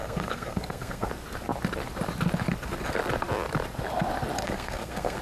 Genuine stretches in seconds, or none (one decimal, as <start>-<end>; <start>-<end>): 1.1-4.4